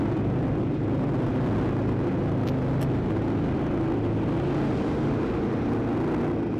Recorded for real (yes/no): yes